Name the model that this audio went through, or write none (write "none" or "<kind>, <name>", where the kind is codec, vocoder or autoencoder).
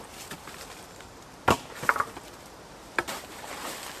none